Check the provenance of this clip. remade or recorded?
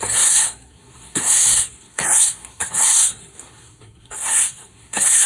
remade